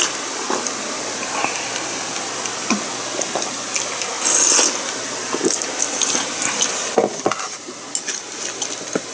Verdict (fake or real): real